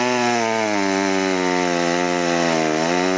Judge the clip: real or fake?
real